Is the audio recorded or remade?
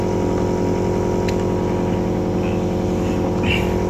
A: recorded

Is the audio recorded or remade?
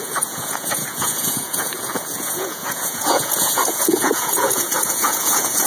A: remade